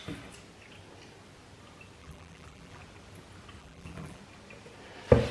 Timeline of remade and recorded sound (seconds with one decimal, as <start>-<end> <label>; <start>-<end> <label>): 0.0-2.0 recorded; 2.0-2.8 remade; 2.8-3.6 recorded; 3.6-4.2 remade; 4.2-5.3 recorded